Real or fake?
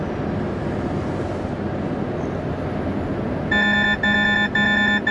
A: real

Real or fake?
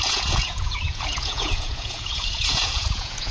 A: fake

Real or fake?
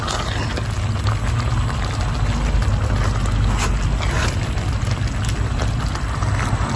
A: real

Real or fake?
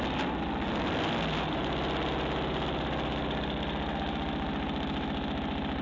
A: real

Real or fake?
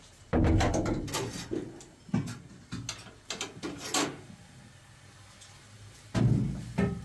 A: real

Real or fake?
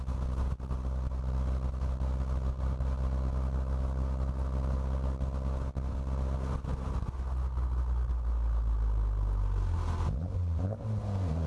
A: real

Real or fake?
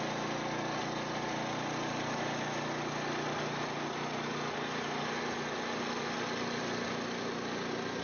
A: real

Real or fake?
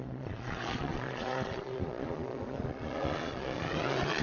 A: fake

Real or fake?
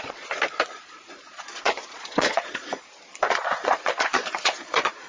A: fake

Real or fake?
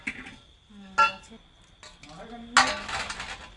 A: real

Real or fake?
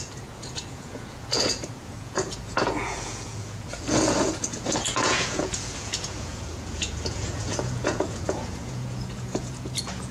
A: fake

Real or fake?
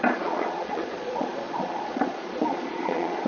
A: fake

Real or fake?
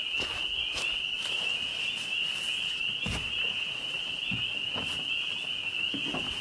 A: real